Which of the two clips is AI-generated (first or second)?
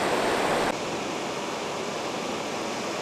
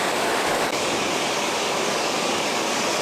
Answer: second